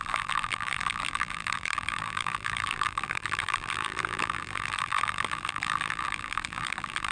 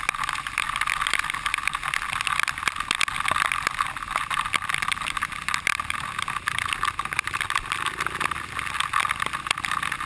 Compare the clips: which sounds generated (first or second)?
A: first